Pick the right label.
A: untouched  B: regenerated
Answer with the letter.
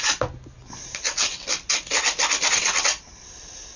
A